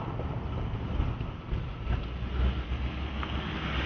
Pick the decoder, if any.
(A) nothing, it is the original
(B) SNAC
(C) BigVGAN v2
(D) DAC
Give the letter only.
A